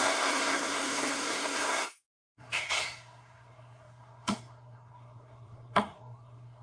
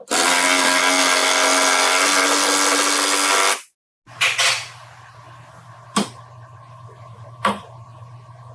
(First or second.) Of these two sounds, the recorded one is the second